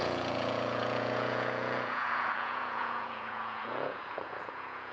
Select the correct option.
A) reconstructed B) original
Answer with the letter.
A